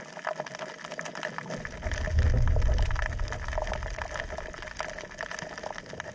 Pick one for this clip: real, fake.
real